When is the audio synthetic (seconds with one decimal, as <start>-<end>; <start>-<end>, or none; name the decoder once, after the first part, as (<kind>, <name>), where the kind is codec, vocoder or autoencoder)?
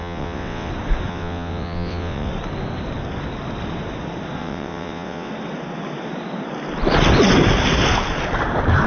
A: 0.0-0.7 (vocoder, WaveNeXt); 1.1-2.3; 4.4-5.3